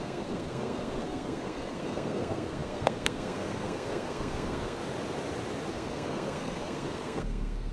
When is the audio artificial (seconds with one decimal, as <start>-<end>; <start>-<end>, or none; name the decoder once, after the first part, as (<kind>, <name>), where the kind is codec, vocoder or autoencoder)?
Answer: 0.0-4.8 (codec, SNAC); 5.7-7.7